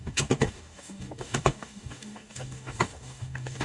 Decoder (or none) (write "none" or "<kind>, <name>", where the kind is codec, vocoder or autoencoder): codec, DAC